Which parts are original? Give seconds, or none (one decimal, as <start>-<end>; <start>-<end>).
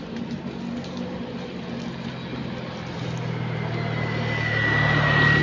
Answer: 0.0-5.4